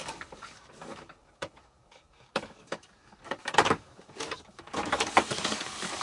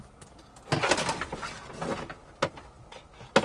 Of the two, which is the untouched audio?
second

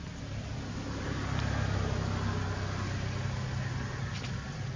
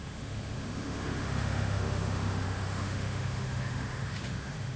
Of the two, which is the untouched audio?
first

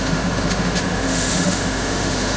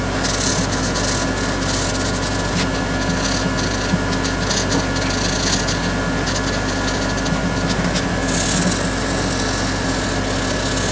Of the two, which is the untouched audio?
second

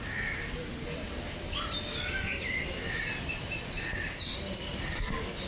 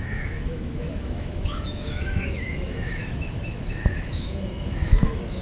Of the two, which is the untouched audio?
first